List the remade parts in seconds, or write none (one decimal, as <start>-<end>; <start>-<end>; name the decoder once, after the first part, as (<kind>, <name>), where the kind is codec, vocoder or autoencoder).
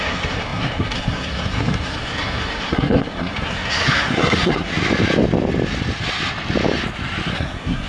0.0-4.7 (codec, SNAC); 7.3-7.9